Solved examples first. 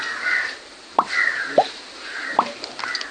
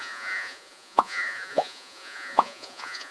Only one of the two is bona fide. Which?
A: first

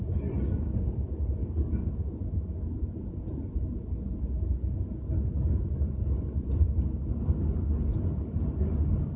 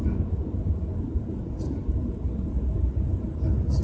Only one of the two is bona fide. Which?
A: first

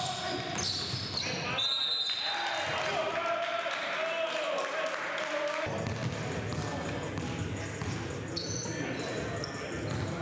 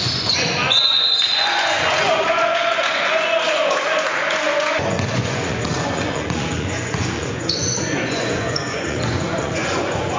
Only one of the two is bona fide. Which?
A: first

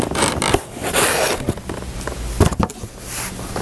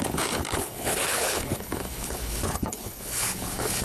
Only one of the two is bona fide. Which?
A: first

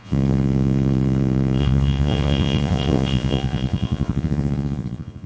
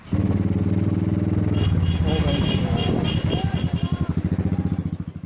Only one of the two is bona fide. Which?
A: second